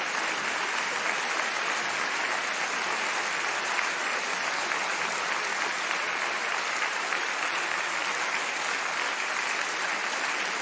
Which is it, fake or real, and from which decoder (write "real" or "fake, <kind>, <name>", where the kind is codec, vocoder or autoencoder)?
real